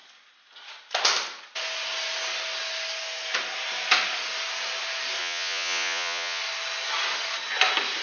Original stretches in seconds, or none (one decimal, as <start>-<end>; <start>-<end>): 0.0-5.2; 6.4-8.0